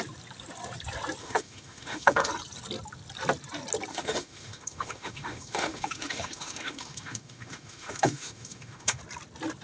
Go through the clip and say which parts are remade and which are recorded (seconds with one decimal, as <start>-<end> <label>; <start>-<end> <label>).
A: 0.0-1.2 recorded; 1.2-2.3 remade; 2.3-3.9 recorded; 3.9-9.0 remade; 9.0-9.6 recorded